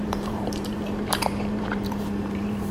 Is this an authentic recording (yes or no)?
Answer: no